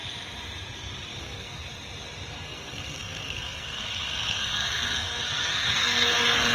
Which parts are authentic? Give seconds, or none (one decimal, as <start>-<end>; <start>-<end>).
0.0-1.2; 1.6-2.3